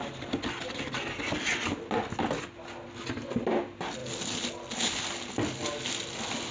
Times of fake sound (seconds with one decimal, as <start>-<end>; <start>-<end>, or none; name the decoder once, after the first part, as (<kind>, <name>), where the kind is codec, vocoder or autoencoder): none